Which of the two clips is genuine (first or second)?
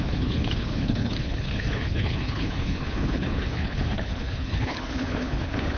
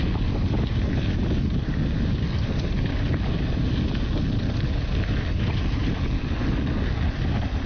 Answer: second